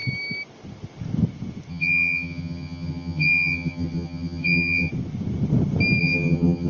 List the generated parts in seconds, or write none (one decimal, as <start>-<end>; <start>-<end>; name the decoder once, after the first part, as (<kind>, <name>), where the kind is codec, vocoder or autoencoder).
1.7-4.9 (vocoder, HiFi-GAN); 6.0-6.7